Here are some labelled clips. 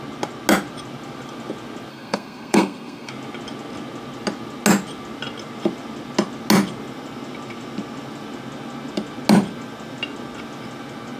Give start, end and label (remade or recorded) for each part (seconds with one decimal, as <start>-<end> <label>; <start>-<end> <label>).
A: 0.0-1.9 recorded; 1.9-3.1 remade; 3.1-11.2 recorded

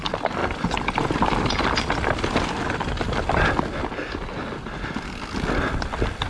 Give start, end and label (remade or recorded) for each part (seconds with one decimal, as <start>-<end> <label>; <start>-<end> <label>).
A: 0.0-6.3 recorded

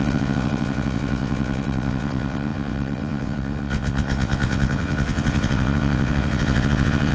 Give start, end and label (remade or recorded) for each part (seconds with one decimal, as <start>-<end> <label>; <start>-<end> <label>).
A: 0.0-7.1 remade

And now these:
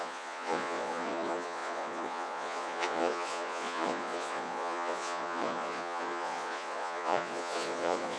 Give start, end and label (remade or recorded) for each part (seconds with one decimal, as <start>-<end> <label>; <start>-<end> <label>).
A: 0.0-8.2 remade

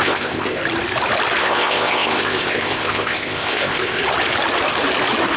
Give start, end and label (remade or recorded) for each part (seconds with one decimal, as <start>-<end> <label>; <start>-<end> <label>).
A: 0.0-0.6 remade; 0.6-1.4 recorded; 1.4-4.0 remade; 4.0-5.4 recorded

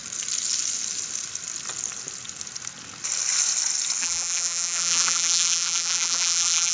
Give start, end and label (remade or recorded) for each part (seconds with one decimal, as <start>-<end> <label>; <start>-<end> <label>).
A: 0.0-4.0 recorded; 4.0-6.7 remade

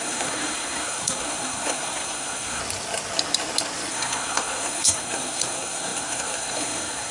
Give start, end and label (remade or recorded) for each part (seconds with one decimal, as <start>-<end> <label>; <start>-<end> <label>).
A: 0.0-2.6 remade; 2.6-3.9 recorded; 3.9-7.1 remade

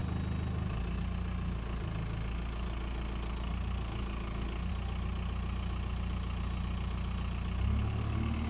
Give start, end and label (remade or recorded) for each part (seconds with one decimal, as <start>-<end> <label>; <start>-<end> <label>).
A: 0.0-8.5 recorded